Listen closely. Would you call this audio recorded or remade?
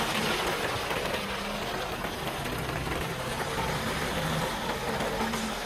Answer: recorded